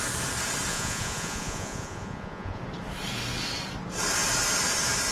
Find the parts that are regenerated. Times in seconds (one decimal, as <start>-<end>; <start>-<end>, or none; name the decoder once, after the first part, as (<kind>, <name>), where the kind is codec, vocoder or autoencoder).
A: 0.7-2.6 (vocoder, Vocos)